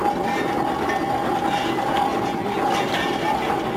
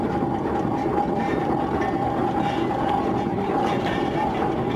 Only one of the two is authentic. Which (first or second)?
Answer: first